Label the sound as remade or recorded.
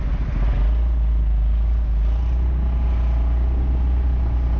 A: recorded